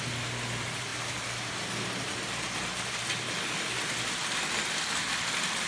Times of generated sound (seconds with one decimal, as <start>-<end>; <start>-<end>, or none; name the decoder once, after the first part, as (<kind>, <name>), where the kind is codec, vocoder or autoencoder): none